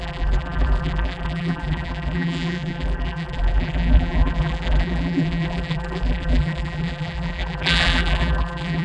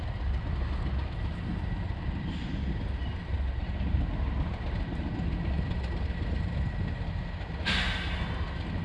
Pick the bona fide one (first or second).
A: second